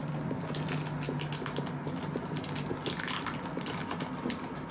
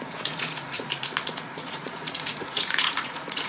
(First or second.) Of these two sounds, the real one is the first